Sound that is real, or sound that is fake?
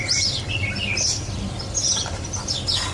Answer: real